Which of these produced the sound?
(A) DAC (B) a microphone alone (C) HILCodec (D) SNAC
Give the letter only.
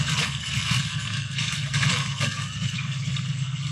D